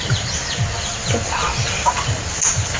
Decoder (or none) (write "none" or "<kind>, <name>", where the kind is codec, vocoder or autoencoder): none